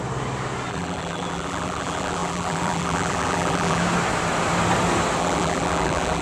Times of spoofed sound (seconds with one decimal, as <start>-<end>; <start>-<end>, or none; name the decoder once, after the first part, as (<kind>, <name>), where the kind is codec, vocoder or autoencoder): 0.7-3.8 (vocoder, BigVGAN v2); 5.2-6.2